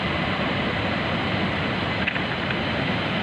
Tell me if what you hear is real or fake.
real